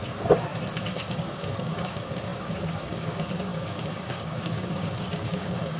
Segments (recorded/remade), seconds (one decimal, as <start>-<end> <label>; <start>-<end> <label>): 0.0-0.8 recorded; 0.8-5.8 remade